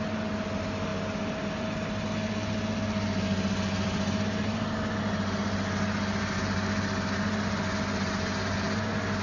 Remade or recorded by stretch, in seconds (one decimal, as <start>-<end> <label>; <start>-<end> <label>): 0.0-9.2 recorded